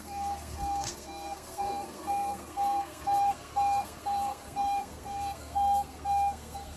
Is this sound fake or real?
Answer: fake